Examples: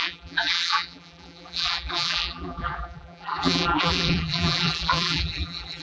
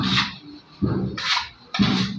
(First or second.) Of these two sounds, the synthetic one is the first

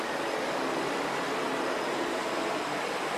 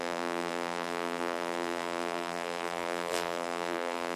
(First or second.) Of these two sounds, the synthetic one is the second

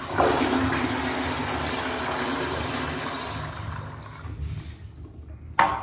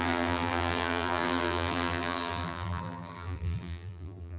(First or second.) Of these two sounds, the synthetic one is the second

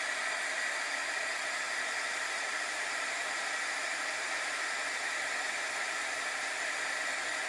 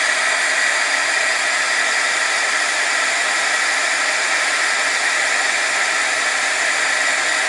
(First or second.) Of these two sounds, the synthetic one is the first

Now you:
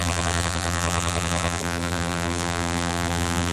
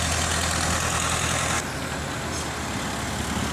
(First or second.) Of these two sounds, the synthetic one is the first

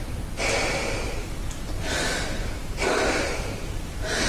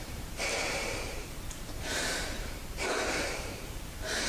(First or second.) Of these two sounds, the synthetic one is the second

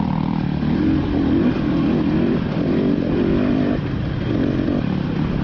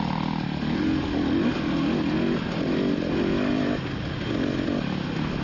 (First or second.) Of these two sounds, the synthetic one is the first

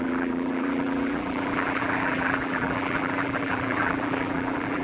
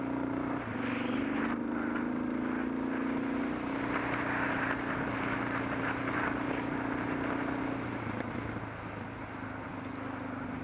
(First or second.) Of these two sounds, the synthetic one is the first